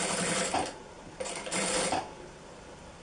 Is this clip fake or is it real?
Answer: fake